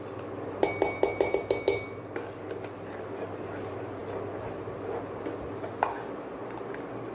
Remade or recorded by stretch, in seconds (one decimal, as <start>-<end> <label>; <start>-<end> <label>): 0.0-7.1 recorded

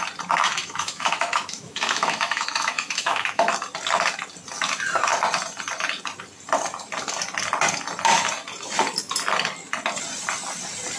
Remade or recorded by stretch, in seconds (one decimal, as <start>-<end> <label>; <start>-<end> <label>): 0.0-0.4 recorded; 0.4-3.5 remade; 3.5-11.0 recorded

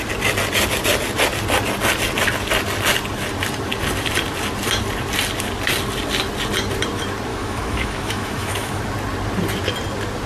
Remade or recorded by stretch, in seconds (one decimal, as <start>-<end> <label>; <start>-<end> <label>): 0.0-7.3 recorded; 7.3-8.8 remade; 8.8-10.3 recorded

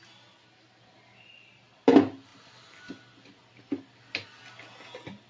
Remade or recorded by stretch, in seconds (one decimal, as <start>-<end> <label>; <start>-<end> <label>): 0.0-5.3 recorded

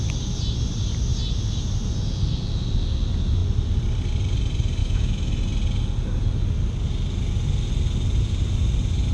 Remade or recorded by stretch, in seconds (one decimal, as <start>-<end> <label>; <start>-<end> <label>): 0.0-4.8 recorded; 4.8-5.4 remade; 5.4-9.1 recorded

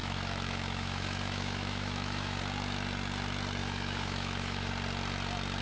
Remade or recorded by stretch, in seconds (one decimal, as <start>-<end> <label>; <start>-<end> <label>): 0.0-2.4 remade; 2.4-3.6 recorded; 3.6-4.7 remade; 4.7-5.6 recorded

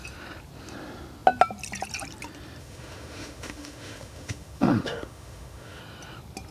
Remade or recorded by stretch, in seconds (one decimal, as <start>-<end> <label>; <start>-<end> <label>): 0.0-2.6 recorded; 2.6-5.8 remade; 5.8-6.5 recorded